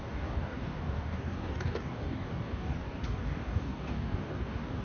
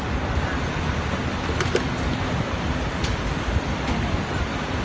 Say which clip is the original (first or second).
second